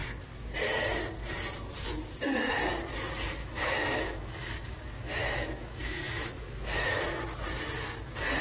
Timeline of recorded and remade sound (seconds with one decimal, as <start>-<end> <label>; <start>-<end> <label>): 0.0-3.4 recorded; 3.4-7.0 remade; 7.0-8.4 recorded